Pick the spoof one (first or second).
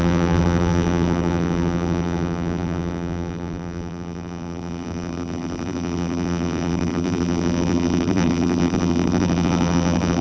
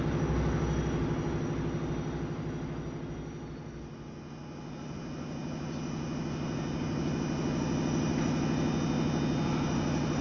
first